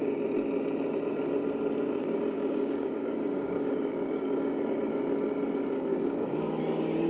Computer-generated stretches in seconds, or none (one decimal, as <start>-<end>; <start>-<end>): 2.0-4.6; 5.9-6.6